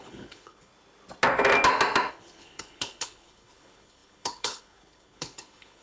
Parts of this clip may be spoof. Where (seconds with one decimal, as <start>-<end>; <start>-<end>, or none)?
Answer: 0.0-0.7; 2.1-5.8